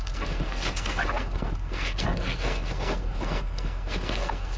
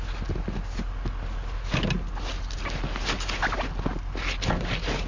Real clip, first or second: second